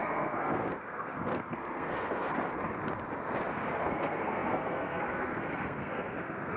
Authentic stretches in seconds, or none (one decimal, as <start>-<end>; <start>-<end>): 2.3-3.7